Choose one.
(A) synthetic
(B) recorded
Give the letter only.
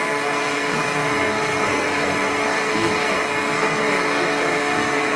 A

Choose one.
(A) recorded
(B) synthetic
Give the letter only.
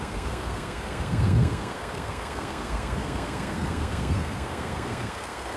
B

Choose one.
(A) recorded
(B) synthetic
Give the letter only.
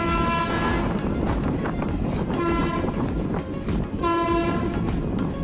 A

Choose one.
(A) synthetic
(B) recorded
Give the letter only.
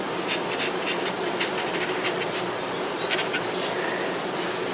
B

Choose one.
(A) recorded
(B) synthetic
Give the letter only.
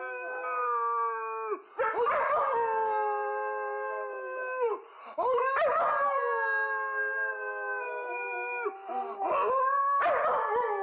A